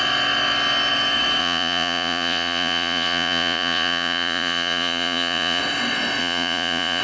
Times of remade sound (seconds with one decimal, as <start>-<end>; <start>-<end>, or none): 1.4-5.6; 6.2-7.0